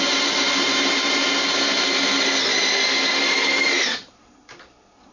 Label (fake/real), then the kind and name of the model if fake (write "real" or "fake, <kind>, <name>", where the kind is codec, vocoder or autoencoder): real